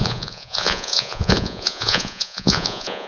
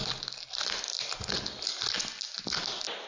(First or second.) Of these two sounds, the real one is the second